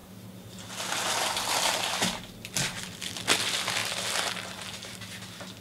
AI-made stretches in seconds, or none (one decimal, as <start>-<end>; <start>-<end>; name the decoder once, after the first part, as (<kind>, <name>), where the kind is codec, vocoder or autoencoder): none